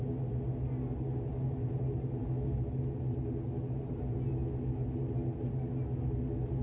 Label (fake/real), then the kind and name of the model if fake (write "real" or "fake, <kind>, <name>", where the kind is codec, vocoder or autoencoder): real